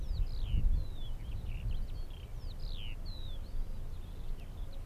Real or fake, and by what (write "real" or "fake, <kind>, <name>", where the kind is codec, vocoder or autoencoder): real